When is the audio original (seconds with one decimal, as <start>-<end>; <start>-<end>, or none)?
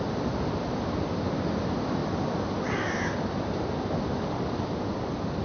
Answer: 0.0-2.0